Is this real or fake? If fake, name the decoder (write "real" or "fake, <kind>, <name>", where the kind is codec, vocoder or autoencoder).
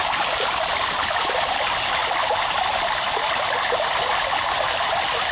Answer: real